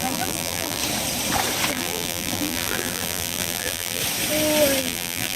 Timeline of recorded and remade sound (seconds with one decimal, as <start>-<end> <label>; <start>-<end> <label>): 0.0-0.8 remade; 0.8-1.7 recorded; 1.7-4.0 remade; 4.0-4.8 recorded; 4.8-5.4 remade